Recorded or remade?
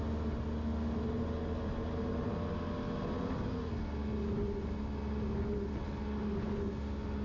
recorded